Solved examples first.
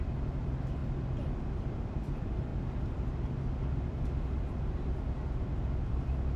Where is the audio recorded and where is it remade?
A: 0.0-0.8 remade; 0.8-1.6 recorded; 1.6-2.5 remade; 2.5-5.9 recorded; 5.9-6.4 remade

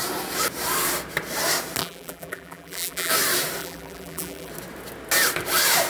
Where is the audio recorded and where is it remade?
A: 0.0-1.8 recorded; 1.8-3.1 remade; 3.1-3.6 recorded; 3.6-4.5 remade; 4.5-5.9 recorded

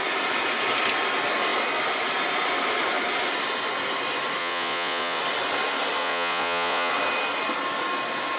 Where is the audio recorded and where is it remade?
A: 0.0-4.4 recorded; 4.4-5.2 remade; 5.2-6.0 recorded; 6.0-6.9 remade; 6.9-8.4 recorded